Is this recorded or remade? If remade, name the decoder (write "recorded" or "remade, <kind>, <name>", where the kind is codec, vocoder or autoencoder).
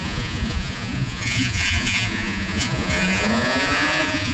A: remade, vocoder, Vocos